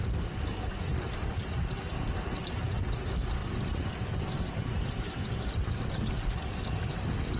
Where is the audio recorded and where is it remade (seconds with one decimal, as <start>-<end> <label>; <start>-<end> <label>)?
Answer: 0.0-7.4 recorded